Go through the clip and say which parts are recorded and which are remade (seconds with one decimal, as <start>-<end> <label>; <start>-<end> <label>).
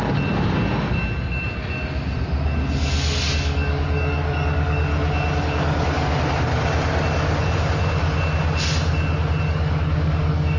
0.0-3.2 recorded; 3.2-4.9 remade; 4.9-5.4 recorded; 5.4-6.1 remade; 6.1-9.4 recorded; 9.4-10.6 remade